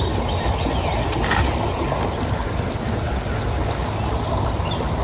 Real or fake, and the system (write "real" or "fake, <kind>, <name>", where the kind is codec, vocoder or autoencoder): real